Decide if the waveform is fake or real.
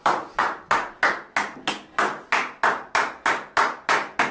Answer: real